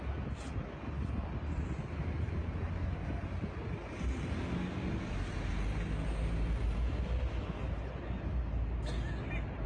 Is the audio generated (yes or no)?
no